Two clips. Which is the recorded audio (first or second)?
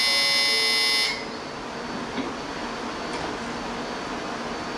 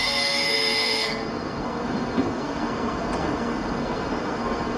first